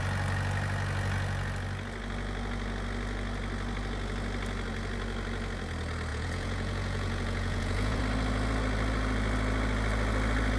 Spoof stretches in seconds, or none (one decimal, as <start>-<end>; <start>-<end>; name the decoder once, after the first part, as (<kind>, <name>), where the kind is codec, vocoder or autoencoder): 6.1-8.0 (vocoder, Vocos)